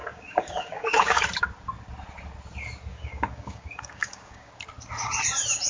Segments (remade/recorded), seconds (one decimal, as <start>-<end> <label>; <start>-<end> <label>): 0.0-1.2 remade; 1.2-2.9 recorded; 2.9-4.5 remade; 4.5-5.7 recorded

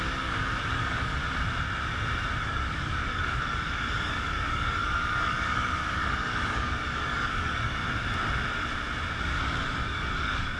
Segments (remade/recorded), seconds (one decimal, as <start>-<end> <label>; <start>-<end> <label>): 0.0-1.2 remade; 1.2-2.4 recorded; 2.4-7.8 remade; 7.8-9.2 recorded; 9.2-10.6 remade

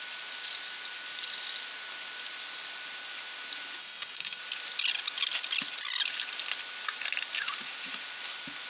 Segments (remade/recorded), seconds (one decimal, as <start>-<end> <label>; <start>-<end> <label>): 0.0-3.8 recorded; 3.8-4.4 remade; 4.4-8.7 recorded

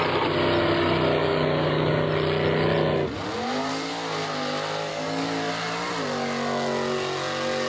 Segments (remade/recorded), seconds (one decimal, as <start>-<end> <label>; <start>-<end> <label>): 0.0-1.2 recorded; 1.2-1.9 remade; 1.9-4.9 recorded; 4.9-5.5 remade; 5.5-7.7 recorded

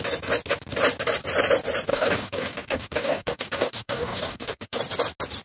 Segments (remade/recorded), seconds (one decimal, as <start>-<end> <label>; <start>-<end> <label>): 0.0-1.9 recorded; 1.9-4.8 remade; 4.8-5.4 recorded

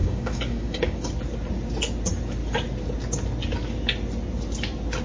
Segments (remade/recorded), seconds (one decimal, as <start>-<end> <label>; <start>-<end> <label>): 0.0-1.1 remade; 1.1-5.0 recorded

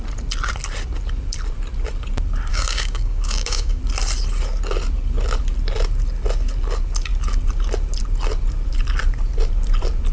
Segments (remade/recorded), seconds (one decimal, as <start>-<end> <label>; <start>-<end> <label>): 0.0-2.5 recorded; 2.5-3.8 remade; 3.8-10.1 recorded